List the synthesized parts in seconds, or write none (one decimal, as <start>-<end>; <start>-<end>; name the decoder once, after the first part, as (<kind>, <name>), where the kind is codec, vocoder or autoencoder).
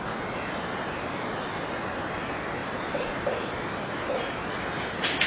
2.6-4.1 (vocoder, BigVGAN v2)